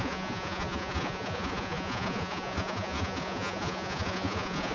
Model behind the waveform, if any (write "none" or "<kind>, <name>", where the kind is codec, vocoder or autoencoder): vocoder, Vocos